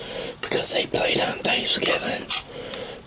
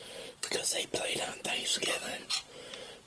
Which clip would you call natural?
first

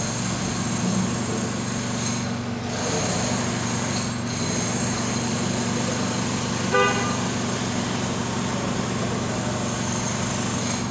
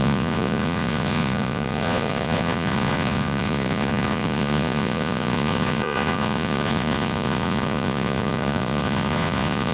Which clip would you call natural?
first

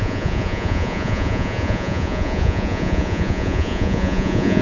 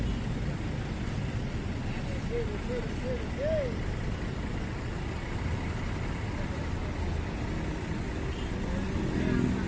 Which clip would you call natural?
second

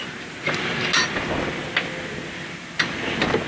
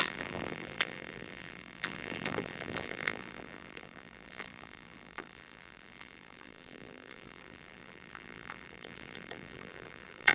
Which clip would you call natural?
first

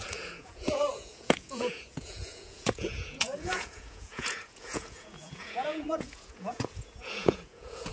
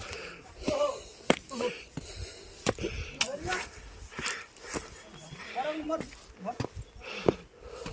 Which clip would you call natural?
second